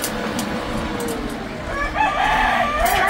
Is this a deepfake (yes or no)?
no